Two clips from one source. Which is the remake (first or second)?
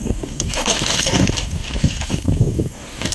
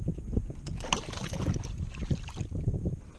first